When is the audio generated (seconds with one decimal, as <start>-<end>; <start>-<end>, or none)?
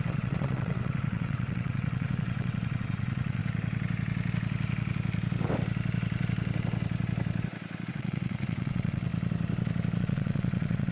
0.0-3.4; 7.9-9.1; 10.0-10.9